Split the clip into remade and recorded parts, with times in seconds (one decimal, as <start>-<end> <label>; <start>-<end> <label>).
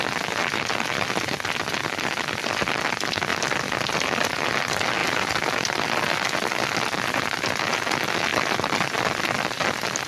0.0-3.3 recorded; 3.3-3.9 remade; 3.9-5.0 recorded; 5.0-6.1 remade; 6.1-8.3 recorded; 8.3-10.1 remade